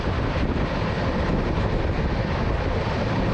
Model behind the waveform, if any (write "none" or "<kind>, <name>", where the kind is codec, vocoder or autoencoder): none